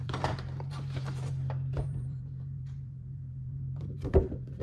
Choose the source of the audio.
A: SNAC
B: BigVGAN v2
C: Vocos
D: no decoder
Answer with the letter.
B